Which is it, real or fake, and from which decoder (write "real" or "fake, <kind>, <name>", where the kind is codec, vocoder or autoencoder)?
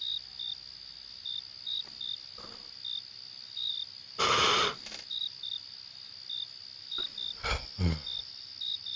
real